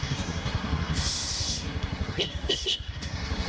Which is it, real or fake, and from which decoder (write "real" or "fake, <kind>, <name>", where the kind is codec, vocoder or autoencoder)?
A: fake, codec, SNAC